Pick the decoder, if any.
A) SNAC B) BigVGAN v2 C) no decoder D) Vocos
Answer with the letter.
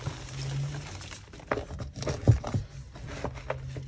C